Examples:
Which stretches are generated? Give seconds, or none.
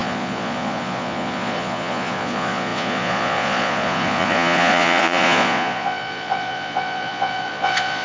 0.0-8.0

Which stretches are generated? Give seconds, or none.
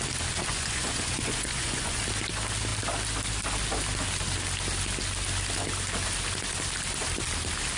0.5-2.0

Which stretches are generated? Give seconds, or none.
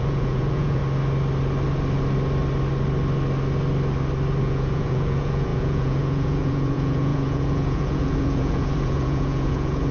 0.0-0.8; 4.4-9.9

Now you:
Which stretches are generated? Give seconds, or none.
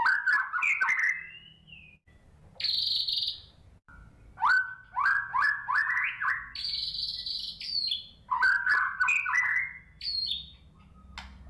5.3-6.3